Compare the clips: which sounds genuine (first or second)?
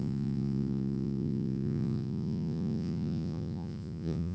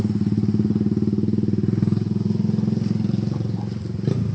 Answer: second